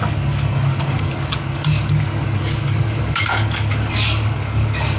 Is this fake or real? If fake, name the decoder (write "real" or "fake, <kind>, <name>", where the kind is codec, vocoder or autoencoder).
fake, codec, DAC